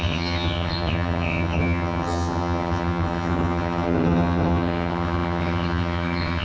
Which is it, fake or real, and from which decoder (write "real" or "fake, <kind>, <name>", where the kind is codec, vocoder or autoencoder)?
fake, vocoder, HiFi-GAN